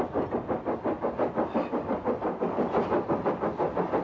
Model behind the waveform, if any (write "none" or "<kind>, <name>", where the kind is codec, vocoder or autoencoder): none